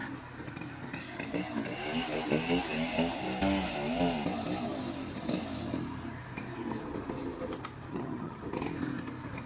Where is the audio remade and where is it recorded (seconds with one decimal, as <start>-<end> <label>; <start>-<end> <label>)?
0.0-7.9 recorded; 7.9-8.4 remade; 8.4-9.5 recorded